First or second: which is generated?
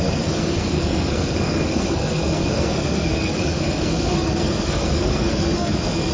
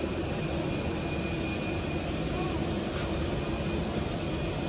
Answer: first